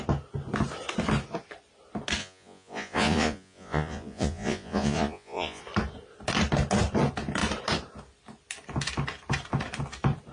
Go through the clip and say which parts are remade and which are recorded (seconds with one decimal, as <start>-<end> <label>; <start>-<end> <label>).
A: 0.0-2.2 recorded; 2.2-5.6 remade; 5.6-10.3 recorded

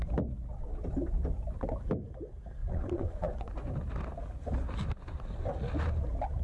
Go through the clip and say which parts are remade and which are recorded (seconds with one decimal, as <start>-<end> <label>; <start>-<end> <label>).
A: 0.0-2.6 recorded; 2.6-3.7 remade; 3.7-6.4 recorded

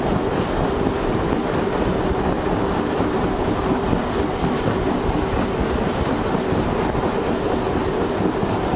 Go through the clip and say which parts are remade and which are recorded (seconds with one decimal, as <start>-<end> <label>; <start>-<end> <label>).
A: 0.0-8.8 recorded

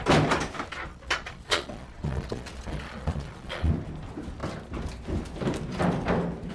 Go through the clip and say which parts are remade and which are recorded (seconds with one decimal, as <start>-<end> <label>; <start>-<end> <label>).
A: 0.0-0.9 recorded; 0.9-3.7 remade; 3.7-6.5 recorded

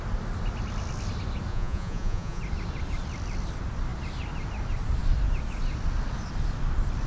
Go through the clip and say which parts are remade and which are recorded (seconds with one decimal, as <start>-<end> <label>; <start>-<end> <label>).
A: 0.0-1.5 recorded; 1.5-2.4 remade; 2.4-7.1 recorded

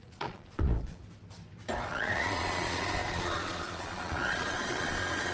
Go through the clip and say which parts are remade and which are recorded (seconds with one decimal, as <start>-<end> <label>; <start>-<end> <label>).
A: 0.0-1.0 remade; 1.0-1.9 recorded; 1.9-5.3 remade

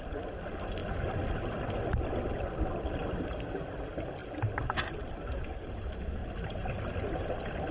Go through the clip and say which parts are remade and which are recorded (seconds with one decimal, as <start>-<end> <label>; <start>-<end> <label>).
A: 0.0-7.7 recorded

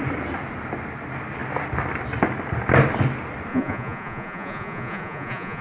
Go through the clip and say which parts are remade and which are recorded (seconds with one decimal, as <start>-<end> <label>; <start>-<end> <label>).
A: 0.0-3.5 recorded; 3.5-5.6 remade